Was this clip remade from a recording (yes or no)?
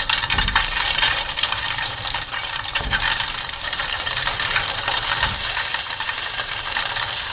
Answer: yes